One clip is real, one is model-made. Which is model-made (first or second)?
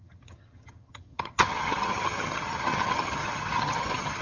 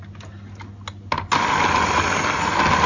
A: first